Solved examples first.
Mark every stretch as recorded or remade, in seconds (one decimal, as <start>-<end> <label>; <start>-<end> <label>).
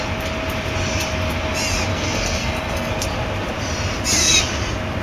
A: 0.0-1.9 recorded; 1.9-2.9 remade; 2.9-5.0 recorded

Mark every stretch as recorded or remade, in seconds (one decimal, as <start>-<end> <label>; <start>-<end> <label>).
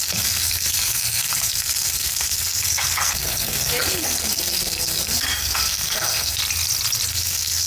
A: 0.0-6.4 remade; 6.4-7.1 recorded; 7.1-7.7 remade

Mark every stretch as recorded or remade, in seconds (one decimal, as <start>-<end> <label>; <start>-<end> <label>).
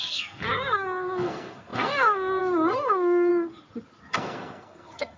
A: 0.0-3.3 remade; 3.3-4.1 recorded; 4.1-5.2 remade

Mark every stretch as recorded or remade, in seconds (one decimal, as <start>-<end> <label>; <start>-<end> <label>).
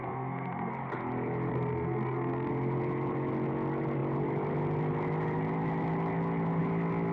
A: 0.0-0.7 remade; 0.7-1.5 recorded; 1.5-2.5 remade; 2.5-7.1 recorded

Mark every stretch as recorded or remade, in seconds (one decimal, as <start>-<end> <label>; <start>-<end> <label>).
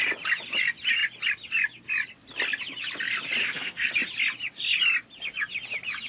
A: 0.0-3.4 recorded; 3.4-3.9 remade; 3.9-6.1 recorded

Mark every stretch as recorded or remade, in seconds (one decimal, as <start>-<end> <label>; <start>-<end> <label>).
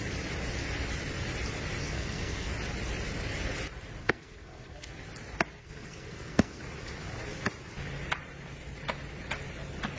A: 0.0-1.8 recorded; 1.8-2.5 remade; 2.5-4.0 recorded; 4.0-4.9 remade; 4.9-5.6 recorded; 5.6-6.6 remade; 6.6-10.0 recorded